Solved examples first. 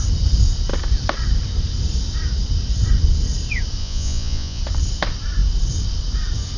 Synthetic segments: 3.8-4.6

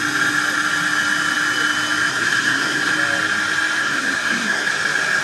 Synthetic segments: 2.1-2.9; 3.8-4.7

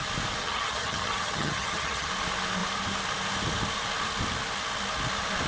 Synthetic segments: 0.4-2.1